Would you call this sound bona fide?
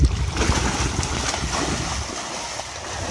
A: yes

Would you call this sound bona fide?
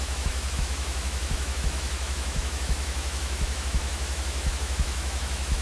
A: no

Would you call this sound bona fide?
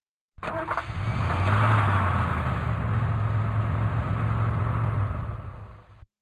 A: yes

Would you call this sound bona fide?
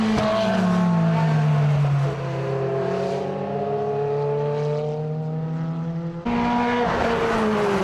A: yes